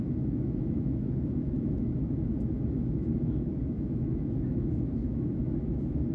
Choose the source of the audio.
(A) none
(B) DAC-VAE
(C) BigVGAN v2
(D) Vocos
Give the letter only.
B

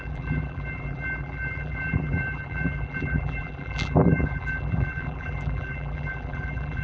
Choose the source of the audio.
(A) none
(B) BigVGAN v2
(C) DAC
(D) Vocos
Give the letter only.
B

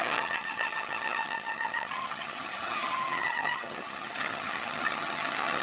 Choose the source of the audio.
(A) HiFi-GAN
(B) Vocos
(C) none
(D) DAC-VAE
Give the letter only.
A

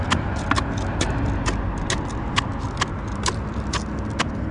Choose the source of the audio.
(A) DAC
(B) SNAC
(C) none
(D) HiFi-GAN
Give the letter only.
C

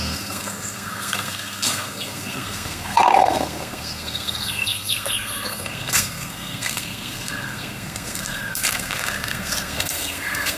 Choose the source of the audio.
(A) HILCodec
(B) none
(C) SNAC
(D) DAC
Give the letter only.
C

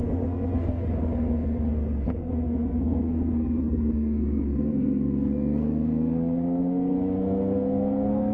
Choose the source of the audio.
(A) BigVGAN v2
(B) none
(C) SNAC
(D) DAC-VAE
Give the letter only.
C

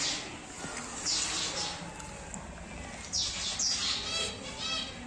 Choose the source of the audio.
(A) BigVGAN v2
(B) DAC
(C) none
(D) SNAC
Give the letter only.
C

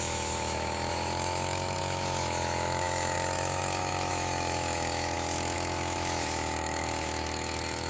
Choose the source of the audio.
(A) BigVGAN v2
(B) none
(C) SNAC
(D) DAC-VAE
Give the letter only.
D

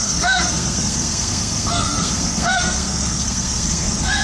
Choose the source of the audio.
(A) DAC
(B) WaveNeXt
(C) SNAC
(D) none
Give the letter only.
C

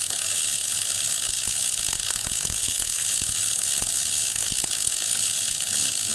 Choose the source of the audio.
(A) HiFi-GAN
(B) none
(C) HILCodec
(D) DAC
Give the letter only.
C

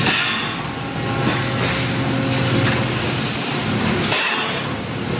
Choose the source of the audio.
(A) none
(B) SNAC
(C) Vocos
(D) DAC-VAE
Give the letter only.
A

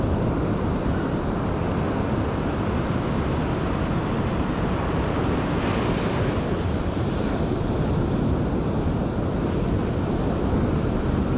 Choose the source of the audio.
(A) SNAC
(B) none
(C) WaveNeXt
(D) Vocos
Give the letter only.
B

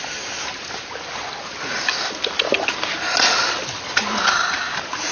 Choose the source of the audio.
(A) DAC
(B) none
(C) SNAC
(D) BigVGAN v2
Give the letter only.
B